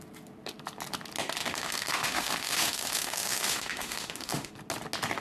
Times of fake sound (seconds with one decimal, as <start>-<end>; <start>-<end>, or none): 1.4-4.5